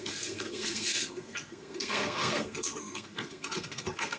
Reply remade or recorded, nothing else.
remade